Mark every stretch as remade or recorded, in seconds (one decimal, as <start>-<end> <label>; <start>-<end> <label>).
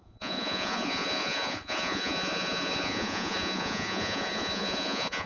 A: 0.0-5.3 remade